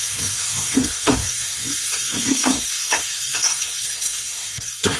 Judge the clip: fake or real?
fake